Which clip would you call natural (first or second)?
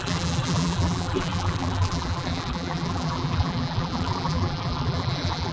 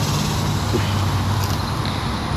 second